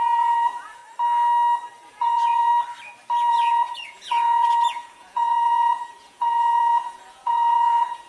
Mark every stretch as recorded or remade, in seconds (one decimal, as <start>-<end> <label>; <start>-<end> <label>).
0.0-0.8 remade; 0.8-1.9 recorded; 1.9-2.5 remade; 2.5-3.3 recorded; 3.3-8.1 remade